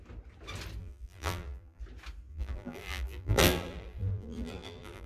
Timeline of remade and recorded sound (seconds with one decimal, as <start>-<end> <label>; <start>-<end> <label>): 0.0-0.8 recorded; 0.8-1.8 remade; 1.8-2.3 recorded; 2.3-5.1 remade